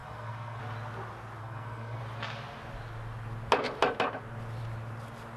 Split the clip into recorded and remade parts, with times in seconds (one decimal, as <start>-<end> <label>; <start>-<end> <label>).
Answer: 0.0-0.6 remade; 0.6-1.4 recorded; 1.4-2.0 remade; 2.0-5.4 recorded